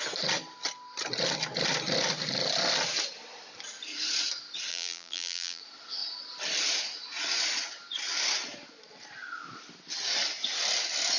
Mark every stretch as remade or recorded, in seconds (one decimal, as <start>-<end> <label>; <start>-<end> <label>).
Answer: 0.0-4.7 recorded; 4.7-5.6 remade; 5.6-11.2 recorded